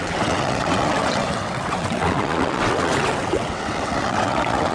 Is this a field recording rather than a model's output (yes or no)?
no